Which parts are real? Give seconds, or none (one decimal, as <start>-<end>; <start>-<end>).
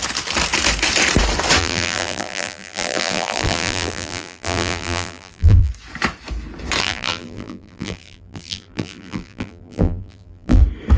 0.0-1.6; 5.7-6.8; 10.6-11.0